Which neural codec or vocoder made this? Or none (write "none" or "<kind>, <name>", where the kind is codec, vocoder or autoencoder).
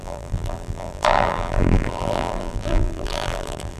vocoder, BigVGAN v2